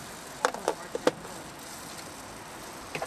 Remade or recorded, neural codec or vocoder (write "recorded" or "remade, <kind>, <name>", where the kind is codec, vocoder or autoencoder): recorded